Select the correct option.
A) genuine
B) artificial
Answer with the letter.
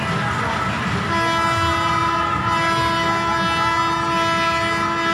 A